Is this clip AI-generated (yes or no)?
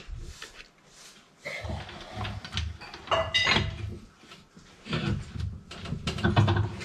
no